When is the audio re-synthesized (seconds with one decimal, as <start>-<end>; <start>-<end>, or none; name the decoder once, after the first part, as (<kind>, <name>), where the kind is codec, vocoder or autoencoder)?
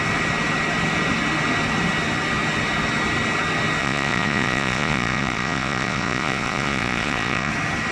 3.8-7.5 (vocoder, Vocos)